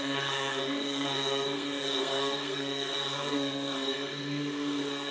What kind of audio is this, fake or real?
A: fake